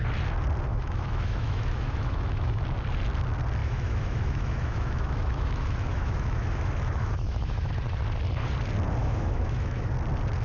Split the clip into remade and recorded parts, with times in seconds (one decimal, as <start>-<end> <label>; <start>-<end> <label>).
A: 0.0-0.7 recorded; 0.7-2.6 remade; 2.6-3.6 recorded; 3.6-7.7 remade; 7.7-9.0 recorded; 9.0-9.9 remade; 9.9-10.4 recorded